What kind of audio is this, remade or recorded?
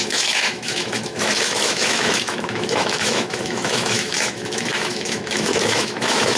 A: remade